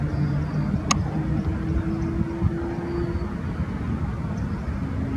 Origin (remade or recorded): recorded